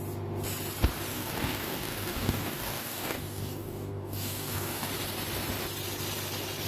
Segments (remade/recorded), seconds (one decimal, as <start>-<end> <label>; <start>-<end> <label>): 0.0-1.1 recorded; 1.1-4.9 remade; 4.9-6.7 recorded